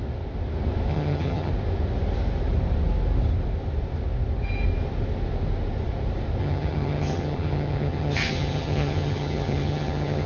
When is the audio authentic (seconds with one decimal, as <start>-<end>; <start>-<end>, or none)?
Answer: 0.0-0.9; 1.5-6.4